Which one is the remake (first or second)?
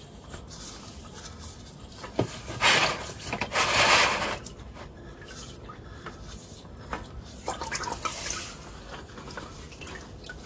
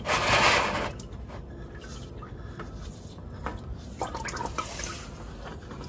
first